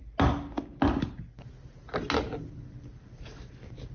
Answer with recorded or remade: recorded